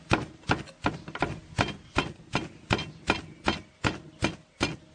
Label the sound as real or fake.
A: real